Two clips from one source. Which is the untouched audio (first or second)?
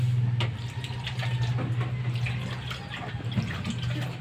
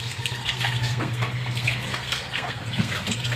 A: first